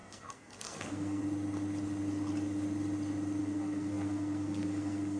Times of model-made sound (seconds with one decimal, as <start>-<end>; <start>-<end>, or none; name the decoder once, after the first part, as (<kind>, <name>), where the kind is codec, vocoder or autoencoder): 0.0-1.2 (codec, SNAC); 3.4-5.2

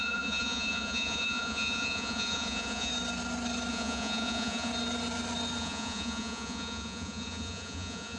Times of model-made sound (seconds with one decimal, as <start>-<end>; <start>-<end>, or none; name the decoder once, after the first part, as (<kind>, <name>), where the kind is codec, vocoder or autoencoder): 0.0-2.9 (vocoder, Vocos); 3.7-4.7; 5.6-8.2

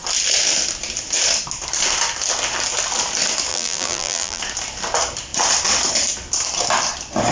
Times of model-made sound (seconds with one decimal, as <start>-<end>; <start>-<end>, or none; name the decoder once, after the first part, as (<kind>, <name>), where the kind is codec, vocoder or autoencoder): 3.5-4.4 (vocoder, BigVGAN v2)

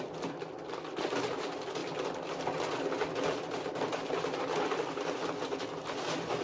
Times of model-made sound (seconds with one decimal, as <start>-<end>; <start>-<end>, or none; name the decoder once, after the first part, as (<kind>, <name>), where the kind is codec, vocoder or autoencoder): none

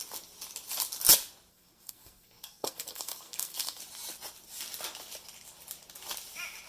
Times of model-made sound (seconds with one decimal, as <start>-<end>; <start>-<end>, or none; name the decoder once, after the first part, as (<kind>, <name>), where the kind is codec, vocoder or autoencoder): 1.5-3.8 (codec, SNAC)

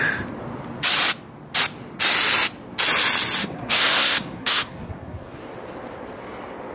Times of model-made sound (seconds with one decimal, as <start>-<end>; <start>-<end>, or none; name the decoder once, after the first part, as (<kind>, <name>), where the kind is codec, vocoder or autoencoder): 3.4-5.4 (codec, SNAC)

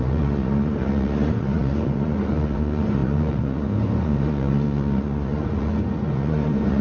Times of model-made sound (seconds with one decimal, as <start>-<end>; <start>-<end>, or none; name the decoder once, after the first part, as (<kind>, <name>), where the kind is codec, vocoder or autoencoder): 0.0-6.8 (vocoder, Vocos)